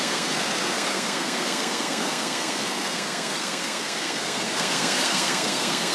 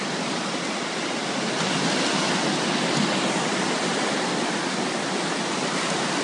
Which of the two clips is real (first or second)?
second